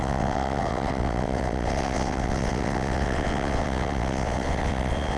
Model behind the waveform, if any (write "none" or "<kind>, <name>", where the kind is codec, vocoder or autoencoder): vocoder, WaveNeXt